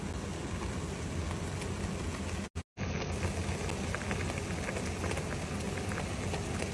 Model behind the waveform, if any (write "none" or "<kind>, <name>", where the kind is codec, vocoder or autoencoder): none